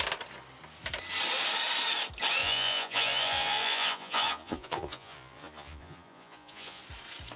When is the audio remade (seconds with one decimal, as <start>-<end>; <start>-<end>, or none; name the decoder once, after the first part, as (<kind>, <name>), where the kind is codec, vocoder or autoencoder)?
2.4-6.8 (vocoder, Vocos)